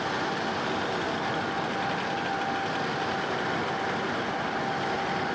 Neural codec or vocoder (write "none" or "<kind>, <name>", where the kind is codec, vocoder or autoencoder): none